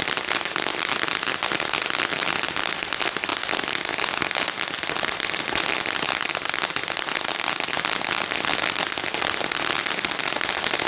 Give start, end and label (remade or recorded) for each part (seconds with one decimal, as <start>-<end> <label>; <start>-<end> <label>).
0.0-10.9 recorded